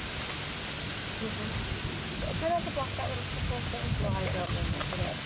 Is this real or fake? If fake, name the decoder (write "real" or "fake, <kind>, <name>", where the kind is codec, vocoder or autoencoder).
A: real